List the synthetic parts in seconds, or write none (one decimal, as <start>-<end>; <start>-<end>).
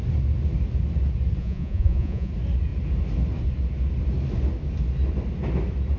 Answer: 1.4-2.3